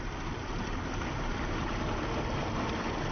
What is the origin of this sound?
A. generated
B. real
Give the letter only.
A